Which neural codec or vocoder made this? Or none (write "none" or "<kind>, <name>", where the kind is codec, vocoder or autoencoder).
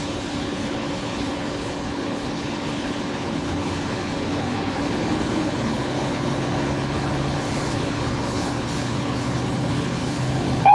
codec, HILCodec